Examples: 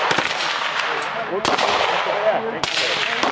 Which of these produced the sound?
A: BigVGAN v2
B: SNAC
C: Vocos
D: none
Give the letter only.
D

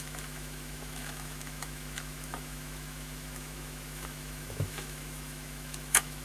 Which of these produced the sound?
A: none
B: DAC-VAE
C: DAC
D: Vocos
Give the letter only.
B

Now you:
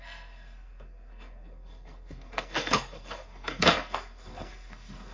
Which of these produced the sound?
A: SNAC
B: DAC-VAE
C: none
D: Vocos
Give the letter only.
A